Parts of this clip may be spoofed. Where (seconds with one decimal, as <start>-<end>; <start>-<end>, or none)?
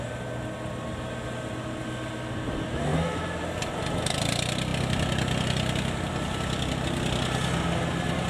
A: none